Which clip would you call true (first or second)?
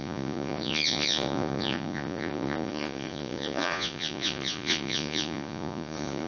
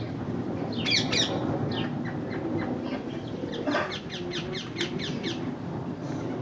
second